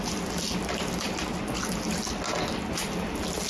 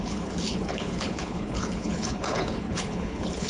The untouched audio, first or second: first